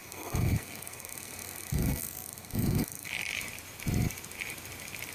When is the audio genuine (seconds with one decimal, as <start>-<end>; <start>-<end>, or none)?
3.1-5.1